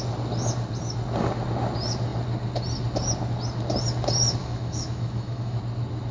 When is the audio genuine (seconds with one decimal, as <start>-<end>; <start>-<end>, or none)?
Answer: 0.0-4.4; 5.6-6.1

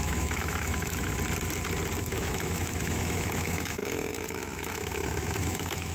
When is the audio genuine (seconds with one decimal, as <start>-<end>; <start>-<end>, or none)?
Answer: 1.1-2.0

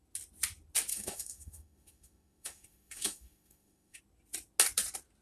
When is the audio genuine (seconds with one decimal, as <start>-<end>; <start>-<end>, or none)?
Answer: 0.0-0.9; 4.0-5.2

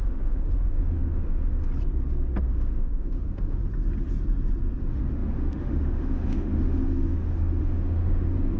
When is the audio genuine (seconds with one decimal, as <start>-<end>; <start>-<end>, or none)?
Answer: 1.7-2.4; 3.6-4.8

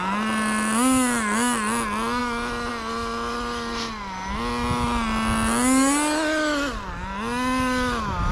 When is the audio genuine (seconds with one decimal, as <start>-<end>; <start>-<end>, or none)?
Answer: 0.0-8.3

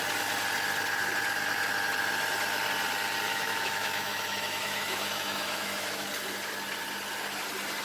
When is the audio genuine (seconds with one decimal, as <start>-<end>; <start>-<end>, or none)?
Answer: 0.0-3.3; 6.1-7.8

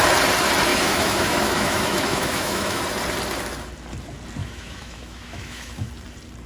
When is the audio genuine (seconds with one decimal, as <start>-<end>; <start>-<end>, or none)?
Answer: 0.0-0.7; 2.8-4.4; 5.9-6.5